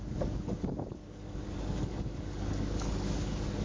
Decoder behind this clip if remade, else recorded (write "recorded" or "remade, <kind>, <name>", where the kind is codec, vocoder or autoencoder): remade, codec, DAC